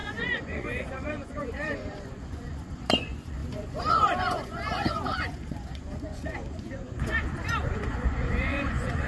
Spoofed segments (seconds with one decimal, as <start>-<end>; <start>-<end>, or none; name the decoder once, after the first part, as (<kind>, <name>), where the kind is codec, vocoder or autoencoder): 0.0-9.1 (vocoder, Vocos)